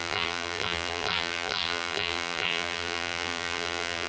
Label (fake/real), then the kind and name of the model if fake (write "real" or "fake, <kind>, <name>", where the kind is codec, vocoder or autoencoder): fake, vocoder, BigVGAN v2